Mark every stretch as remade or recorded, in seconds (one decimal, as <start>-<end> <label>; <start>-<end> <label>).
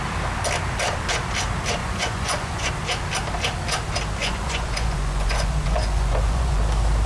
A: 0.0-1.8 recorded; 1.8-2.7 remade; 2.7-4.2 recorded; 4.2-6.6 remade; 6.6-7.1 recorded